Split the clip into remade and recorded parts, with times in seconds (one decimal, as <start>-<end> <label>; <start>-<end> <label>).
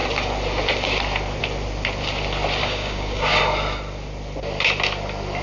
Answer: 0.0-2.6 recorded; 2.6-3.4 remade; 3.4-5.4 recorded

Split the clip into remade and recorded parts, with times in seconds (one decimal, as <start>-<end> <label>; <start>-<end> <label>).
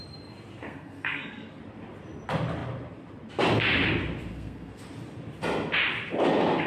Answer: 0.0-0.6 recorded; 0.6-1.6 remade; 1.6-4.3 recorded; 4.3-4.8 remade; 4.8-6.7 recorded